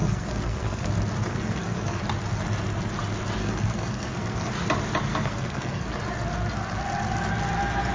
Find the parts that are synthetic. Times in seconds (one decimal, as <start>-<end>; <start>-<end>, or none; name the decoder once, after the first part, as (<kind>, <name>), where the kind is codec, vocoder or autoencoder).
0.0-0.9 (codec, SNAC); 1.3-2.0; 3.4-4.5; 5.1-5.9